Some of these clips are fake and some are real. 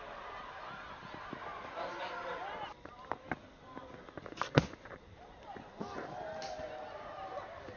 real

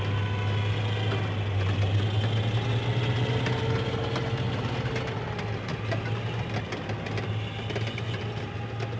real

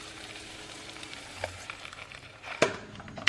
fake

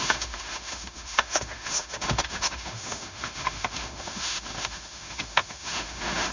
fake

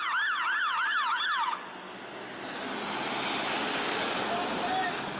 real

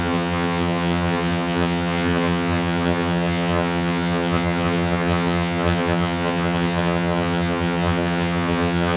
fake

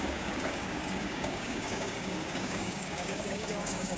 fake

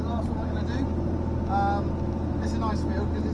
real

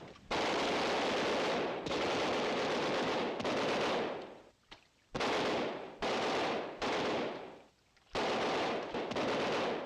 real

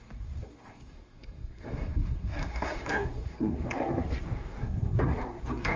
fake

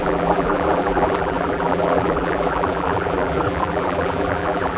fake